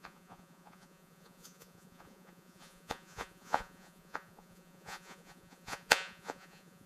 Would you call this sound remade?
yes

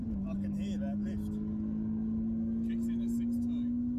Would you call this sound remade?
no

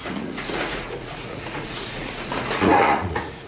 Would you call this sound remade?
yes